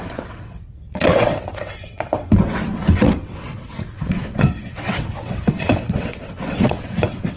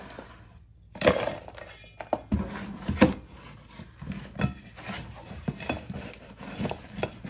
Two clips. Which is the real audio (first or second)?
second